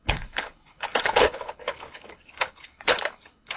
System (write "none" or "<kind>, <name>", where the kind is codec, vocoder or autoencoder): codec, HILCodec